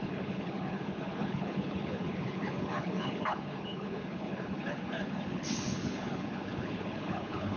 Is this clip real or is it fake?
fake